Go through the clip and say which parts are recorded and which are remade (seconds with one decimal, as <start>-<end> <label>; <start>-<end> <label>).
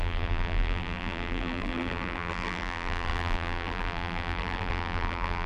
0.0-5.5 remade